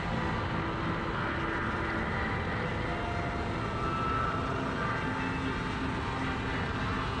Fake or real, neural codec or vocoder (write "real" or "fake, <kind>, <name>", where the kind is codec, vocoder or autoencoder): real